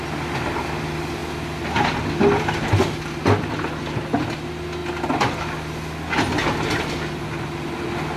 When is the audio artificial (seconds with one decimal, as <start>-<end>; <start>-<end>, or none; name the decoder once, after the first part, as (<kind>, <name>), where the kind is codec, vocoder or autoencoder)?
none